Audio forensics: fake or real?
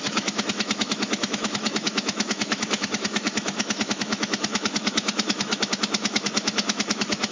fake